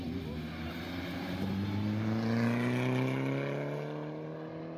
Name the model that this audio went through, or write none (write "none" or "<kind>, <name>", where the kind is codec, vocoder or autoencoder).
none